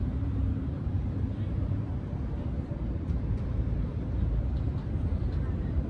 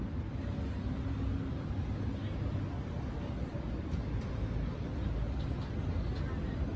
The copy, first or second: first